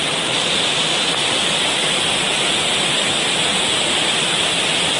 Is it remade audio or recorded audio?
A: recorded